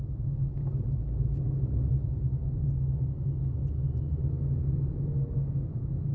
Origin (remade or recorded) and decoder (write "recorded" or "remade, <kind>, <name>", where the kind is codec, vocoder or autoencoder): recorded